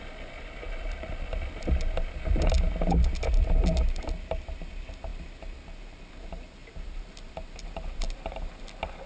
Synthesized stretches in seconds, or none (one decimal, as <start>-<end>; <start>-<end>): none